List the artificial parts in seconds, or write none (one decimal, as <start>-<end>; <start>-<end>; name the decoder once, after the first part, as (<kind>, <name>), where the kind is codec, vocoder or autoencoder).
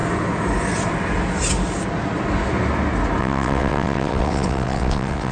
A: 3.2-5.3 (vocoder, WaveNeXt)